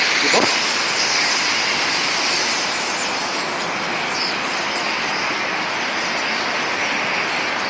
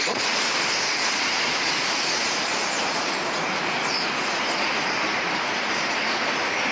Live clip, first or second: first